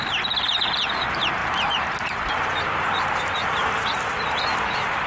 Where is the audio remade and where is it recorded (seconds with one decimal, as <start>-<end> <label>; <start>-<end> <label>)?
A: 0.0-3.4 remade; 3.4-4.0 recorded; 4.0-5.1 remade